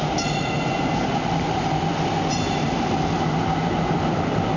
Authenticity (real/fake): real